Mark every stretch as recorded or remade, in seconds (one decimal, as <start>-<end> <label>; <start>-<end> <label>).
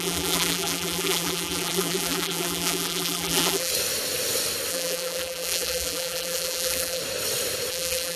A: 0.0-3.7 remade; 3.7-4.7 recorded; 4.7-7.0 remade; 7.0-7.7 recorded; 7.7-8.2 remade